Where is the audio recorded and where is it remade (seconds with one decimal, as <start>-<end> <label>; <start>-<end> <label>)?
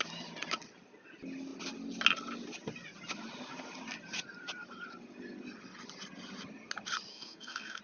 0.0-7.1 recorded; 7.1-7.8 remade